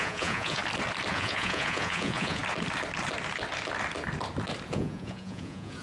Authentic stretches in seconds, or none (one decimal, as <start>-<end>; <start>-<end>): 0.6-1.1; 2.4-4.7

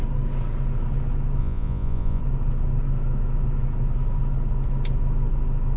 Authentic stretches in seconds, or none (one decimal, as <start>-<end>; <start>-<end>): 0.0-1.4; 2.2-5.8

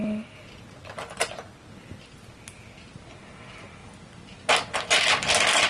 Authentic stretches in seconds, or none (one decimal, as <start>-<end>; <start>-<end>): 0.0-5.7

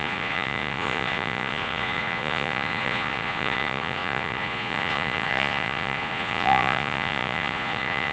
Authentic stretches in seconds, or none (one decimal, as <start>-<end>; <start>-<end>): none

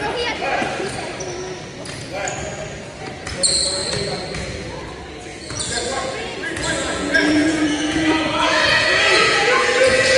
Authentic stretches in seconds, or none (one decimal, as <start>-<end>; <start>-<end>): 0.0-5.3

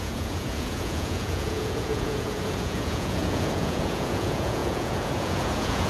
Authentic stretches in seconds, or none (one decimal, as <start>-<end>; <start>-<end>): none

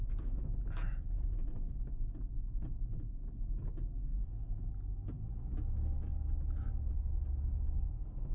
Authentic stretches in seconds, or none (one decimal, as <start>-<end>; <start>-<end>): 1.7-4.1; 4.7-8.3